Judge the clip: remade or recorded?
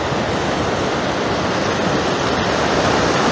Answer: recorded